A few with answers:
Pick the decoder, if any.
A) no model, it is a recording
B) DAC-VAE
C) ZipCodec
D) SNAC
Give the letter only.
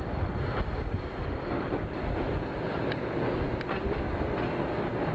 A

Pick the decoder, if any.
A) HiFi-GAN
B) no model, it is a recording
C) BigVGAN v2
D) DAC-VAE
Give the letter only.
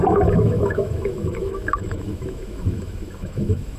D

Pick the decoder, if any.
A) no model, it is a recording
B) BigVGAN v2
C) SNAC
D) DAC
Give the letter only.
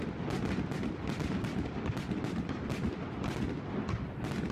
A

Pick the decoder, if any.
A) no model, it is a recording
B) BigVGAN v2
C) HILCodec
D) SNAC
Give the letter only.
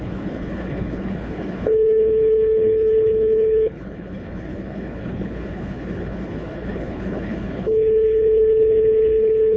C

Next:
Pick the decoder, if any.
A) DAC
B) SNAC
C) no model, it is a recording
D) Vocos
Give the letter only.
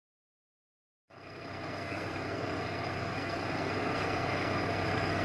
B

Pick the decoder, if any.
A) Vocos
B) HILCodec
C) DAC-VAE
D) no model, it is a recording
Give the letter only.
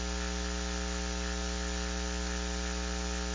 D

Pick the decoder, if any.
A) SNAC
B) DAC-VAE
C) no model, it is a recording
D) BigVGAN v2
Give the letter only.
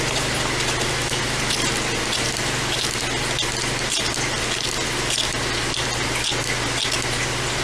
C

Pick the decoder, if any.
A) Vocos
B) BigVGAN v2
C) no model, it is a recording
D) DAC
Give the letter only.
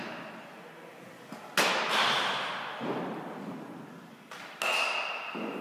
C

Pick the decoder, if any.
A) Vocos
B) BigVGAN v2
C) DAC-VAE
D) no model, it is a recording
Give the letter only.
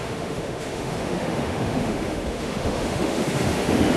C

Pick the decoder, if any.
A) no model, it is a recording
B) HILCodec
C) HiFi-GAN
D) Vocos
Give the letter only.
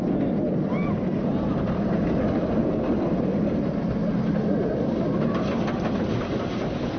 A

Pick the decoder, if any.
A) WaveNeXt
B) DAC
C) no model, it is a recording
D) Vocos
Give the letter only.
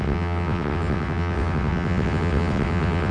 A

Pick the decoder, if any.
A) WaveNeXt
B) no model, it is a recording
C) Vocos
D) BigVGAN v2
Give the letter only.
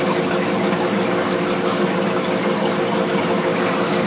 B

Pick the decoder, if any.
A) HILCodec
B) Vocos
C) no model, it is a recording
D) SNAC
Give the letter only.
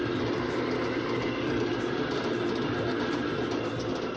C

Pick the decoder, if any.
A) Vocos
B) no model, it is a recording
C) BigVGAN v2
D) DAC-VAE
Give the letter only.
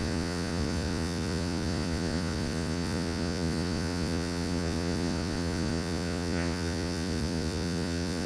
A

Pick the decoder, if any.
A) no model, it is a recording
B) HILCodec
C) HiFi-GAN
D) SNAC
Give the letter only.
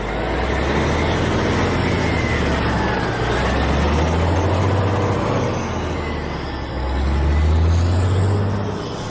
A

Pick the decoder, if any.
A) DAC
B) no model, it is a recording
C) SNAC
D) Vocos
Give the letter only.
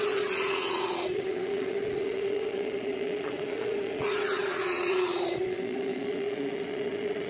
D